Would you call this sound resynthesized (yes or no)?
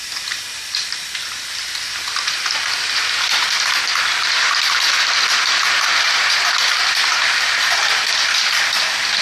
yes